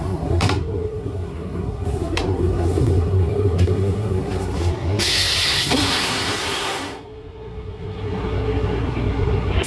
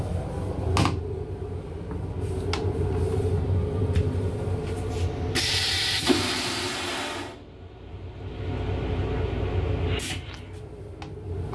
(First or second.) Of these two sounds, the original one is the second